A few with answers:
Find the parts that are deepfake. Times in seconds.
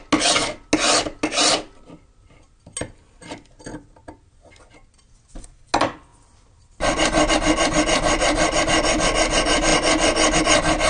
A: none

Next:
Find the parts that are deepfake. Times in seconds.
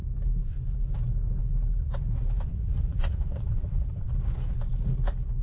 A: 2.5-4.1 (vocoder, Vocos)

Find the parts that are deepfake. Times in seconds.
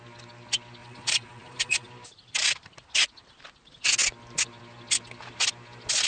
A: 0.8-1.9 (vocoder, Vocos)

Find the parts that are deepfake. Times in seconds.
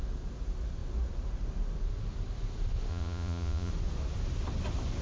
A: 2.9-3.7 (vocoder, Vocos)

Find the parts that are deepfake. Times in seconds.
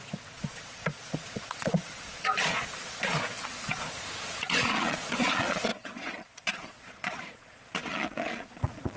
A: 0.0-9.0 (vocoder, Vocos)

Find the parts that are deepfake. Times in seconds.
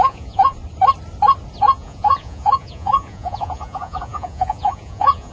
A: 0.0-0.5 (vocoder, Vocos); 1.6-5.3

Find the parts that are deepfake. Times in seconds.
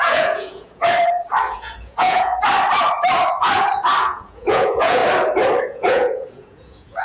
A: 0.0-0.8 (vocoder, Vocos); 1.5-2.3; 4.0-5.0; 5.6-7.0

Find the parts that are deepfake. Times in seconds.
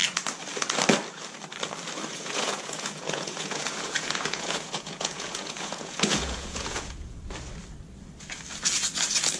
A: 2.1-7.2 (vocoder, Vocos)